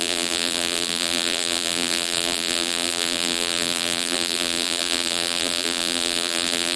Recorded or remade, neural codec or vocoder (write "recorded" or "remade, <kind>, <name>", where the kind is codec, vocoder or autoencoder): remade, vocoder, BigVGAN v2